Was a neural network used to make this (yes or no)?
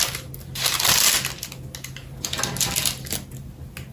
no